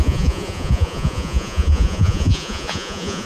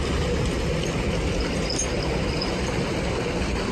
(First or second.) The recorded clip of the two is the second